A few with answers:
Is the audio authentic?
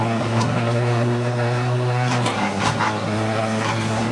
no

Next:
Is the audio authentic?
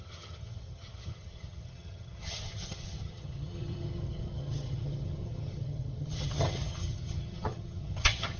no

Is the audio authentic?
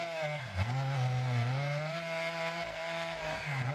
no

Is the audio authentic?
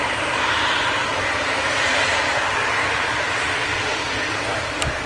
no